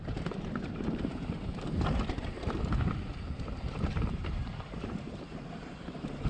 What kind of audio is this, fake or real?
fake